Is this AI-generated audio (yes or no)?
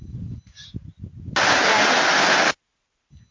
no